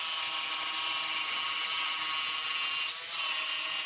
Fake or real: real